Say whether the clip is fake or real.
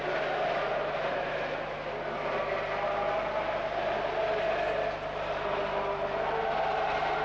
real